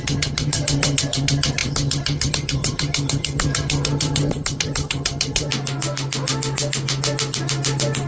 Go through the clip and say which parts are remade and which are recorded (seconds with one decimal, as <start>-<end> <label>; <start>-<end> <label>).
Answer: 0.0-5.5 remade; 5.5-8.1 recorded